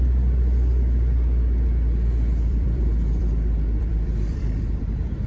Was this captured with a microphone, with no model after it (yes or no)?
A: no